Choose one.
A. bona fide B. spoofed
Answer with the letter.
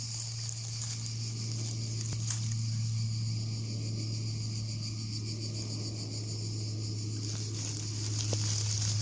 A